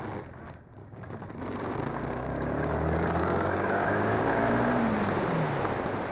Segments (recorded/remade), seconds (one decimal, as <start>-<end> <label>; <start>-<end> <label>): 0.0-0.8 recorded; 0.8-4.5 remade; 4.5-6.1 recorded